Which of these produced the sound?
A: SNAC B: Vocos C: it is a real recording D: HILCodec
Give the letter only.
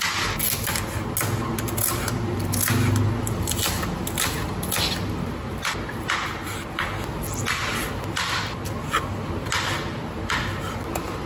C